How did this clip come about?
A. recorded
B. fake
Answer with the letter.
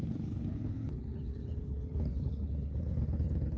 B